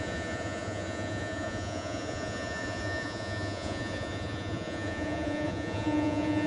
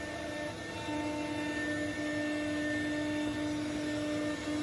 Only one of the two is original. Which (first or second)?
second